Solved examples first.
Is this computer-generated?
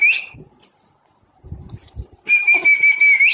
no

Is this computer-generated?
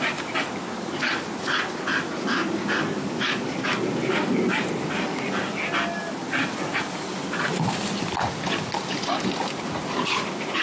no